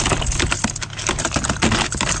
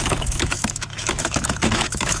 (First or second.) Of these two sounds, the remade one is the second